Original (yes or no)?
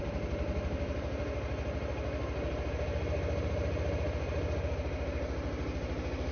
yes